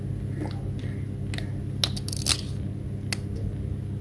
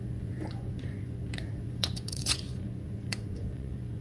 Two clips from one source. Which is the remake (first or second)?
second